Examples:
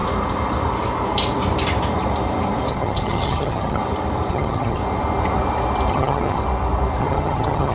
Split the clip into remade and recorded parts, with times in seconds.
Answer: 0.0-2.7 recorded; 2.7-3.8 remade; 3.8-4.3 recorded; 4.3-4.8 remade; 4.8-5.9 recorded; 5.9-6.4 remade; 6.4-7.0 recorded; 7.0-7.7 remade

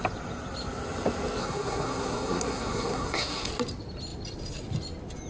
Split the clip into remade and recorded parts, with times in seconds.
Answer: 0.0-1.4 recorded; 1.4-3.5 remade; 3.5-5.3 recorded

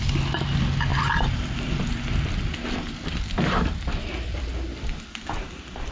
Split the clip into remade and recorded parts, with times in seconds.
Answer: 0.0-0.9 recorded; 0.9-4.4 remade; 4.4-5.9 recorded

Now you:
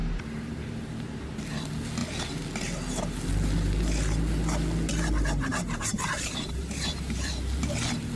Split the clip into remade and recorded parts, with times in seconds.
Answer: 0.0-1.2 remade; 1.2-5.5 recorded; 5.5-7.3 remade; 7.3-8.2 recorded

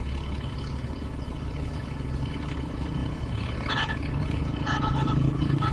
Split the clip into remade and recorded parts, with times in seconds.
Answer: 0.0-5.7 remade

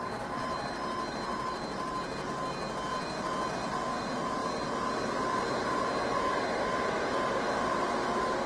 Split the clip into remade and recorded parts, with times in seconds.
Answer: 0.0-8.5 recorded

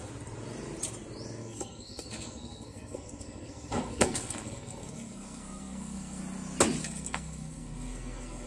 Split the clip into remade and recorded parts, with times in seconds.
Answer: 0.0-1.4 recorded; 1.4-6.2 remade; 6.2-6.8 recorded; 6.8-8.5 remade

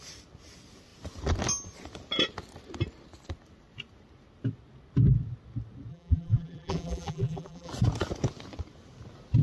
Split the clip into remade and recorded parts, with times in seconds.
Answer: 0.0-5.9 recorded; 5.9-7.7 remade; 7.7-9.4 recorded